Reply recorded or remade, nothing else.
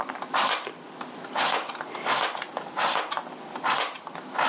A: remade